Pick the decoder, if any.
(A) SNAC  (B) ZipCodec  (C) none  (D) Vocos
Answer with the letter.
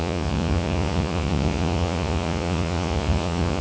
D